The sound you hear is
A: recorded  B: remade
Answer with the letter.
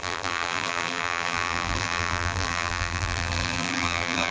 B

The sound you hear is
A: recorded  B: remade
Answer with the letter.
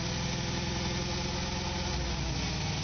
A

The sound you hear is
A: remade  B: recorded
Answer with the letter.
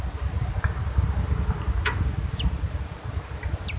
B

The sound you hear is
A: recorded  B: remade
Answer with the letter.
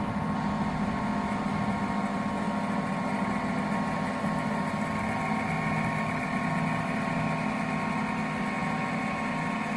A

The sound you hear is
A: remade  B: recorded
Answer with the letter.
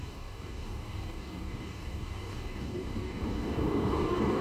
A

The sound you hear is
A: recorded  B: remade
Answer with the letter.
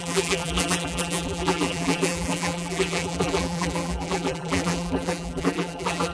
B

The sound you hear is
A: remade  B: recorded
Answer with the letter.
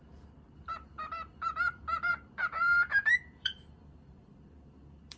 A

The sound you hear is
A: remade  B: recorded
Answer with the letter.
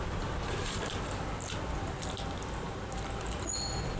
B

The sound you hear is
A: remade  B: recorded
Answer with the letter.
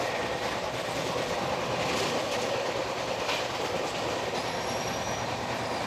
B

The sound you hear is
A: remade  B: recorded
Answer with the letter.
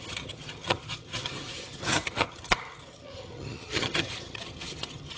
A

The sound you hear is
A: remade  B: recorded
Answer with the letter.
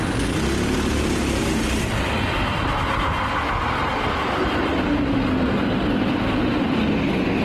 B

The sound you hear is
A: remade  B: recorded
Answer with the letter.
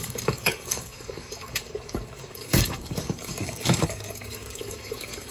A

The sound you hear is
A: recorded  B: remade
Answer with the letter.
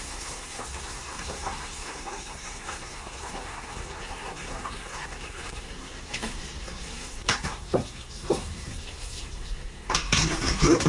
B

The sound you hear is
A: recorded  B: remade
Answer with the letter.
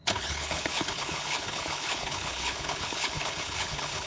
B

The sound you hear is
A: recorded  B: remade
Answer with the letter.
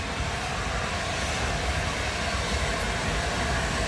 A